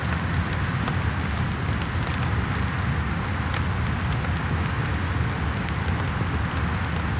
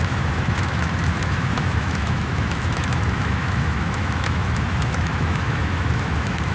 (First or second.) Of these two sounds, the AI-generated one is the second